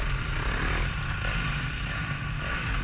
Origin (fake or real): real